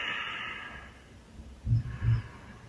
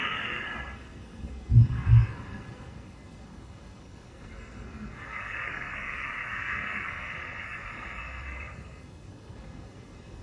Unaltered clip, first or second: first